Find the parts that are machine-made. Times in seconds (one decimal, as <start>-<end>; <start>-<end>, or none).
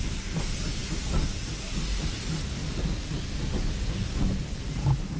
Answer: none